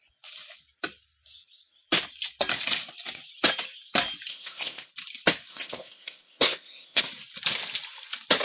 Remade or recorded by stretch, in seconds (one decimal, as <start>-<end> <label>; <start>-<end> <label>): 0.0-4.3 recorded; 4.3-4.9 remade; 4.9-5.5 recorded; 5.5-7.0 remade; 7.0-8.4 recorded